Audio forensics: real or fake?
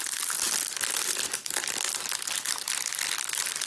real